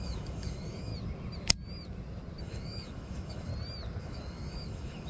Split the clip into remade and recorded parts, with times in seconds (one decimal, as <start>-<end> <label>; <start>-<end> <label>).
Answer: 0.0-0.9 remade; 0.9-2.4 recorded; 2.4-3.5 remade; 3.5-4.0 recorded; 4.0-5.1 remade